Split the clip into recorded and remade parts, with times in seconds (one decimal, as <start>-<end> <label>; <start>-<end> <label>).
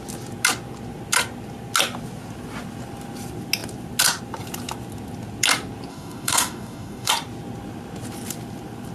0.0-5.9 recorded; 5.9-7.1 remade; 7.1-8.9 recorded